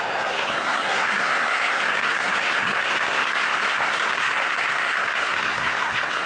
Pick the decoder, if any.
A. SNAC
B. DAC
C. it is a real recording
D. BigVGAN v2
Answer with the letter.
A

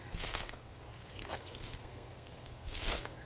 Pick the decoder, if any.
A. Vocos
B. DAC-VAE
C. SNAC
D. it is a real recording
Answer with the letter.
C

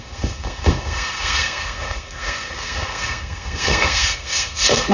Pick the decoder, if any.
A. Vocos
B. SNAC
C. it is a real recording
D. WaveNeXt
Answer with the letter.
B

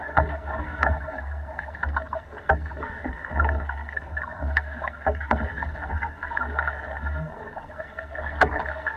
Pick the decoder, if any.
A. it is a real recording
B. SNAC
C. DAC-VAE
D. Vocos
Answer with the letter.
B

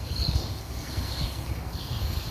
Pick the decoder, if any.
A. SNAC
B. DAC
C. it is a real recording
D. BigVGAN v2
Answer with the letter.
A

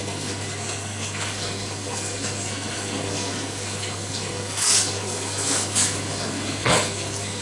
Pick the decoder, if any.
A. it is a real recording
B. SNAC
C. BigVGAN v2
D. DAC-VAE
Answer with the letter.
B